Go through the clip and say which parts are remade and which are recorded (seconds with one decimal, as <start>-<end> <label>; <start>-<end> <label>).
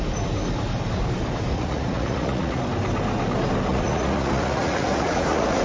0.0-1.5 recorded; 1.5-2.6 remade; 2.6-3.7 recorded; 3.7-5.6 remade